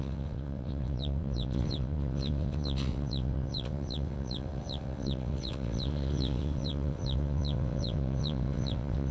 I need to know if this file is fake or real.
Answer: fake